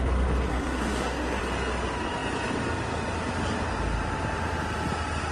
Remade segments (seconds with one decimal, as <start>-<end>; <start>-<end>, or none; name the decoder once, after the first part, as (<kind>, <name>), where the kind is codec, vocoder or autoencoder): 0.5-1.4 (codec, SNAC)